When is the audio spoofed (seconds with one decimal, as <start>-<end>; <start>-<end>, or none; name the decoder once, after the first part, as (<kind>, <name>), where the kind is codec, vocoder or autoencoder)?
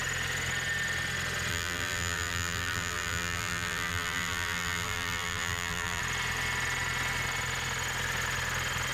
1.5-6.0 (vocoder, BigVGAN v2)